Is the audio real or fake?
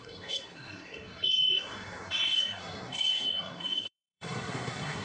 fake